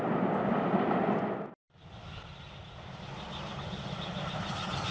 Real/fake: real